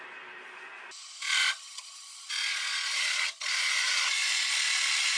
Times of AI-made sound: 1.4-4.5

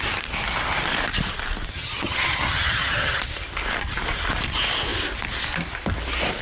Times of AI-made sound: 1.7-3.2